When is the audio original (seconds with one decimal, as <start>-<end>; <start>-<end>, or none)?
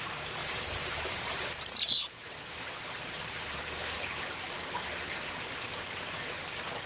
0.0-0.4; 4.5-6.9